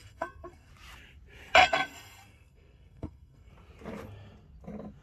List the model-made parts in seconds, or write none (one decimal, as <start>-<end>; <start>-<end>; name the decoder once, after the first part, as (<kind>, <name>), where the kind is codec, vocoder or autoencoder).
0.0-0.7 (codec, SNAC); 1.6-3.5